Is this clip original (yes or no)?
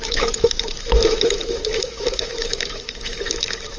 no